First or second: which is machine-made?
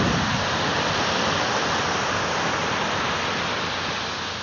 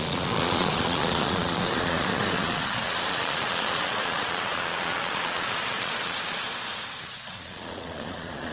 second